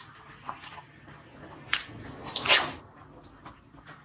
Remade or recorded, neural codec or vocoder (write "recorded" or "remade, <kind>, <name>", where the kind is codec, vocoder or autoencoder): recorded